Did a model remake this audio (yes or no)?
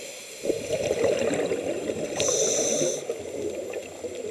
no